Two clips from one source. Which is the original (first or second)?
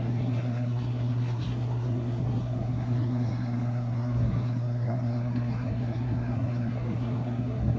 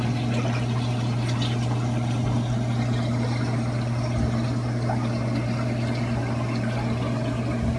second